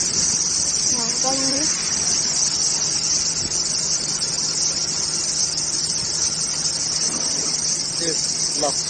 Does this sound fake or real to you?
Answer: fake